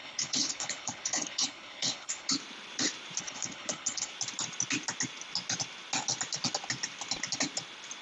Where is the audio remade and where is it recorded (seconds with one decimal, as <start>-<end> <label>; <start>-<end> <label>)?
0.0-2.3 remade; 2.3-3.2 recorded; 3.2-4.1 remade; 4.1-8.0 recorded